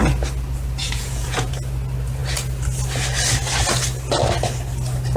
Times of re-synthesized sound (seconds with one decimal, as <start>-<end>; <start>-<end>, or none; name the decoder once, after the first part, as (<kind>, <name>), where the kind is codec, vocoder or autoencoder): 0.8-1.5 (vocoder, Vocos)